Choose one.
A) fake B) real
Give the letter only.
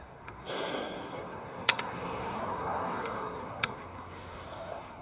A